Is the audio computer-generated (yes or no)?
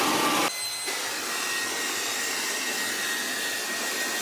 no